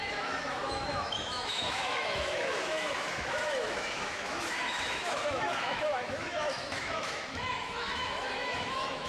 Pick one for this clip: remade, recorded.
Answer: remade